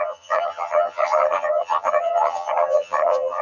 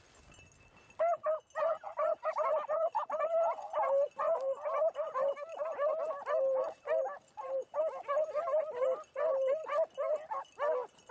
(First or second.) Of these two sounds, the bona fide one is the second